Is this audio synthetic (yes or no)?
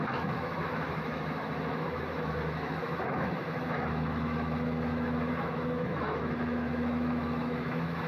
yes